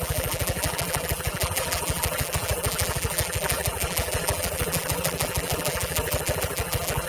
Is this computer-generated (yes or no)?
yes